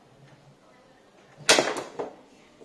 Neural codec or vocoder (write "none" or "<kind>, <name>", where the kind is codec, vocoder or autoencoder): none